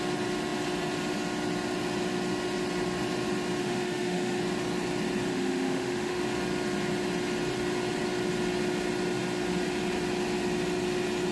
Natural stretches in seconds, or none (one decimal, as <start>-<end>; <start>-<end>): 0.0-3.6; 4.4-5.3; 6.2-11.3